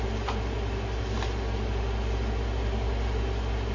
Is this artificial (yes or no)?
no